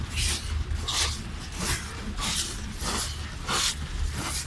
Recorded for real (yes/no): yes